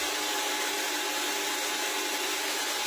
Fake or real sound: real